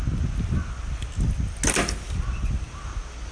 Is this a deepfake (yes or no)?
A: no